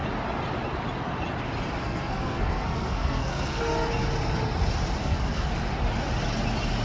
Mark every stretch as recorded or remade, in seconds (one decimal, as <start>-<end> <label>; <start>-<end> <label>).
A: 0.0-1.8 recorded; 1.8-3.6 remade; 3.6-5.0 recorded; 5.0-5.5 remade; 5.5-6.8 recorded